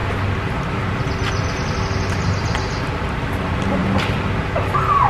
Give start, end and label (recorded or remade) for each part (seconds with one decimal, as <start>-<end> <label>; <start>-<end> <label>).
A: 0.0-3.1 remade; 3.1-5.1 recorded